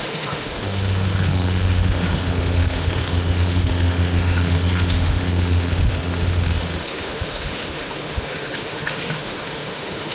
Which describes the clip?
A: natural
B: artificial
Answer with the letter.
B